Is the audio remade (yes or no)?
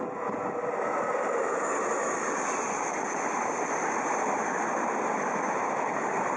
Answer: no